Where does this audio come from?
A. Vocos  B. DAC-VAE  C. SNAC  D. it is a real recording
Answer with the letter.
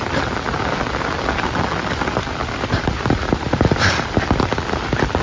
D